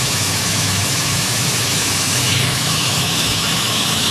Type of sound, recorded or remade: remade